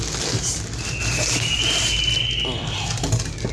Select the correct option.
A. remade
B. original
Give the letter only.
B